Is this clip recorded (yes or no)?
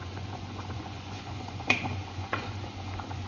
no